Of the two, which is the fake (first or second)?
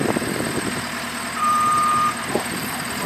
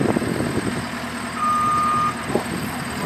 first